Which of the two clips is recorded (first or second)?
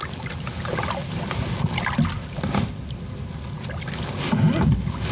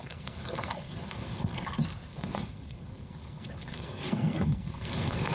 first